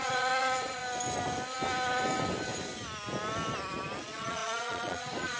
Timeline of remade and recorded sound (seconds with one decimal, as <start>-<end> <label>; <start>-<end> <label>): 0.0-0.8 remade; 0.8-4.0 recorded; 4.0-5.4 remade